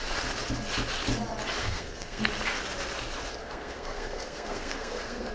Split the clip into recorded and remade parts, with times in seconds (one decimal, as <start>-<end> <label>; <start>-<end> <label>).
0.0-1.6 recorded; 1.6-2.2 remade; 2.2-3.4 recorded; 3.4-5.3 remade